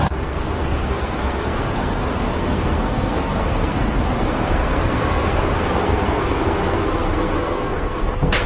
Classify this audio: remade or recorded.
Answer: remade